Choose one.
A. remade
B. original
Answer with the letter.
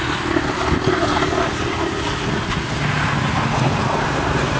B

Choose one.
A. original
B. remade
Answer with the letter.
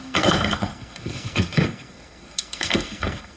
B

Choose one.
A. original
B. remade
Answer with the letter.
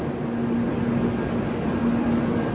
A